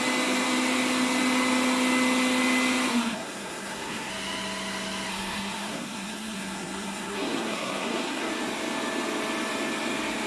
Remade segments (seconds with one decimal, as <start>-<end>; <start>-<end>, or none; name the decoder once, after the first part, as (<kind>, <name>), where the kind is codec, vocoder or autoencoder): 2.9-4.1 (codec, SNAC); 5.1-8.3